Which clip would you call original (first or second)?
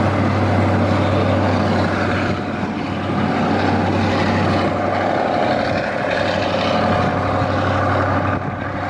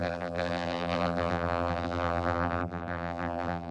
first